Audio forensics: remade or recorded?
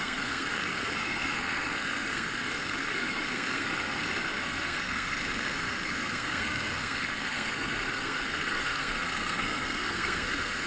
remade